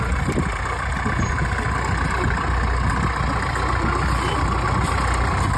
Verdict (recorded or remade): recorded